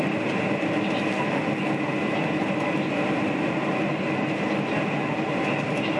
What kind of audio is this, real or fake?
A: real